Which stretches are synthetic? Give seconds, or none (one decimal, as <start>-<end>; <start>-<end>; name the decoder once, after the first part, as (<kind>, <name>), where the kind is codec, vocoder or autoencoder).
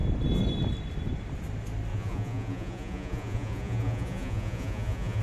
1.9-5.2 (vocoder, Vocos)